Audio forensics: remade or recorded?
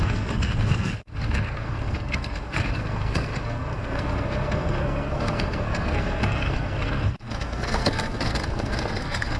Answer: remade